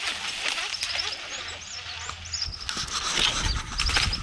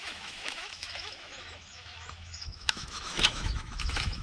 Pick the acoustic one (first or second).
first